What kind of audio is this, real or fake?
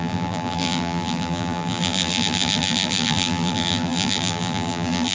fake